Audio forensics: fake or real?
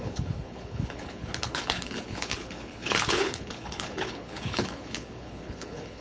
fake